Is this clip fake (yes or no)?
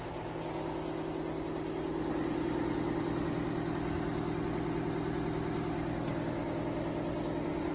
no